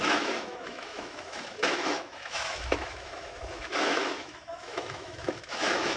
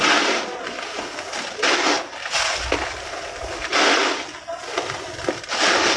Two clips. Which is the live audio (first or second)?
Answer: second